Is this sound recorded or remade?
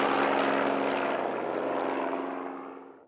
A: recorded